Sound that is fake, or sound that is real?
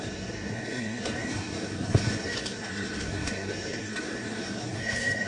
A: fake